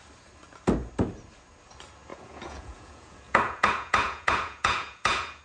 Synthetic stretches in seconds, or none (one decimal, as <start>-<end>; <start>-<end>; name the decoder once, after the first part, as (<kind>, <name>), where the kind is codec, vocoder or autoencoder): 2.1-5.4 (vocoder, Vocos)